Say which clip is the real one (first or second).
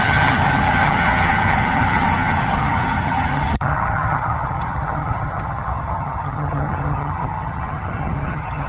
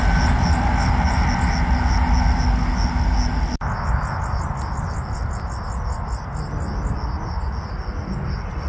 second